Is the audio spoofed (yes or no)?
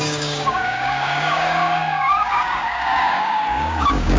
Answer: yes